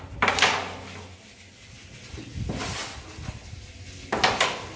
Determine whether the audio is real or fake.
real